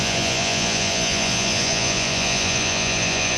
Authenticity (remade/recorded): remade